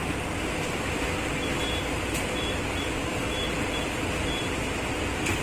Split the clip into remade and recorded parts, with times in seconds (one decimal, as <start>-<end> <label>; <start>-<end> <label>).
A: 0.0-0.7 recorded; 0.7-5.4 remade